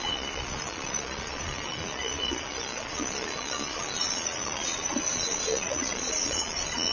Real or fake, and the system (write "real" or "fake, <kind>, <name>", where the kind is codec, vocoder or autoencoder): fake, vocoder, Vocos